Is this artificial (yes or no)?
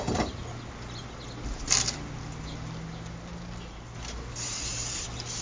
no